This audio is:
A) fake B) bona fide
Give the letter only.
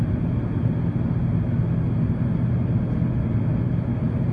B